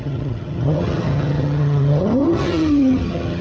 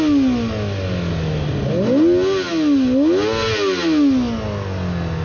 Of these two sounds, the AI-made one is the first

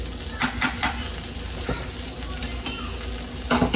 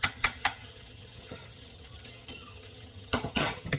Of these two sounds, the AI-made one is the second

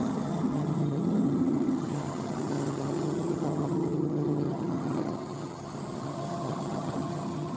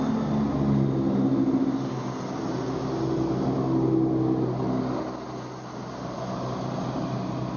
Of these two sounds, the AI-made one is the first